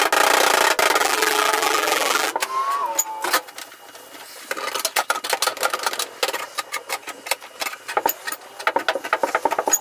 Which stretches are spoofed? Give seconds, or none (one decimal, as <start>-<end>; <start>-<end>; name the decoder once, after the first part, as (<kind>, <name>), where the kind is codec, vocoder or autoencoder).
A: 1.0-2.3 (vocoder, BigVGAN v2)